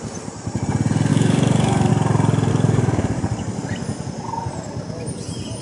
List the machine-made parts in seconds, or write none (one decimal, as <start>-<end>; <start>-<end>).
1.1-1.9; 2.5-3.6

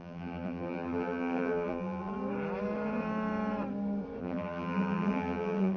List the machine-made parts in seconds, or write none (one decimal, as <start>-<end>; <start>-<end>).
0.0-2.1; 4.2-5.8

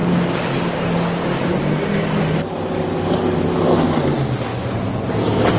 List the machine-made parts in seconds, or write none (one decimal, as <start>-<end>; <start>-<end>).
4.5-5.1

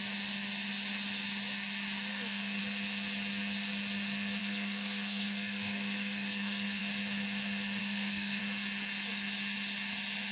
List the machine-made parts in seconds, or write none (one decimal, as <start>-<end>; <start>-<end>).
2.1-2.6; 4.4-6.8; 7.8-8.4

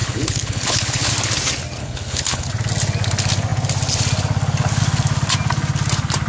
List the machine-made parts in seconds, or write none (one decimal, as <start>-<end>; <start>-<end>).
0.0-1.1; 1.8-2.5

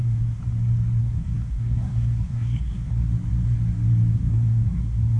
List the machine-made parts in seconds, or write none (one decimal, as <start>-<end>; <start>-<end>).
0.0-0.4; 1.0-3.1; 4.1-5.2

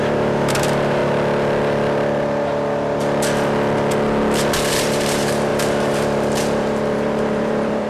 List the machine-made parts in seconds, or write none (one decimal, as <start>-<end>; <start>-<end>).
0.0-1.0; 4.7-7.9

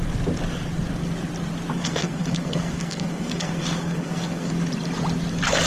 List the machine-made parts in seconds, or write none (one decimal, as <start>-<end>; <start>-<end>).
1.8-4.5